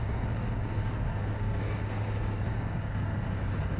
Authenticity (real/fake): fake